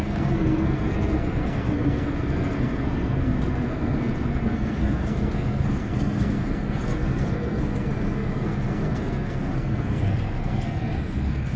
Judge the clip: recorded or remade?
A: remade